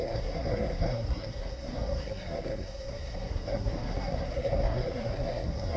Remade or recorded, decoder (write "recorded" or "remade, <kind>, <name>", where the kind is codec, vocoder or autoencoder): remade, codec, SNAC